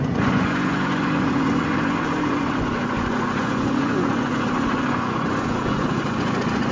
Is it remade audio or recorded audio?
remade